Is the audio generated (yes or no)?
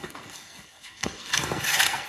yes